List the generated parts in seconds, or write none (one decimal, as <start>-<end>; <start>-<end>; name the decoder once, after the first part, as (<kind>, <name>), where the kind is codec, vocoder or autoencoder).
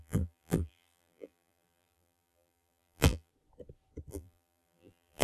0.0-3.3 (vocoder, BigVGAN v2); 4.1-5.2